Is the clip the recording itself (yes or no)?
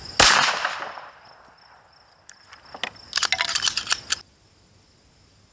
yes